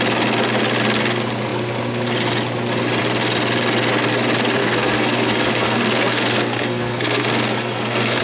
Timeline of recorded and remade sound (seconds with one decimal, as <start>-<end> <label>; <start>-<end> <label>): 0.0-4.6 recorded; 4.6-8.2 remade